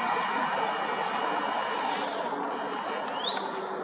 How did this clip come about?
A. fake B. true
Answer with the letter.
B